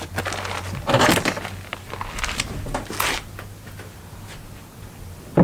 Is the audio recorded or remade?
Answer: recorded